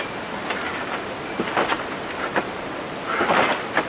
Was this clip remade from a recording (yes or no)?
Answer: yes